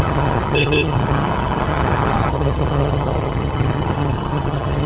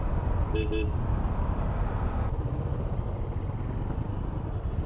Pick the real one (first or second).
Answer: second